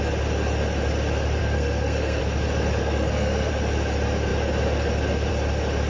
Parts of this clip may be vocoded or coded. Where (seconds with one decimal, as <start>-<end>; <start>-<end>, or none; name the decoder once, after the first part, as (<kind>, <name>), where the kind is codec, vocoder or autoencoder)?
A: 1.4-2.2 (codec, SNAC); 2.8-3.5

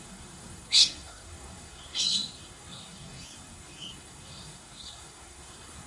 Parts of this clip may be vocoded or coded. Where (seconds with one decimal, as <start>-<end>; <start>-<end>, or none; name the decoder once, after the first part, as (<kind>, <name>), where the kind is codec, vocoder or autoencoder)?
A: 0.0-5.9 (codec, SNAC)

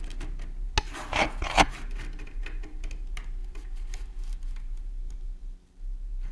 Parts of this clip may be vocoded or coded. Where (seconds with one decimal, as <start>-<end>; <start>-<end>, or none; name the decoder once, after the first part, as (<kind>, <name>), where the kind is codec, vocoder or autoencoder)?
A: none

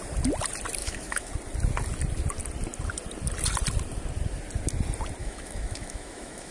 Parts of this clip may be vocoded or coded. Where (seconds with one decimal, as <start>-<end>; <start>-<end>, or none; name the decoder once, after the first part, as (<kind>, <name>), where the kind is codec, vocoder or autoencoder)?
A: 0.8-1.3 (autoencoder, DAC-VAE); 5.2-6.5